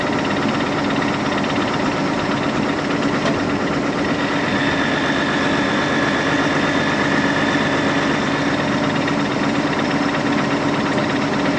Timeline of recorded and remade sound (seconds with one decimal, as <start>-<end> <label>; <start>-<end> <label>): 0.0-11.6 recorded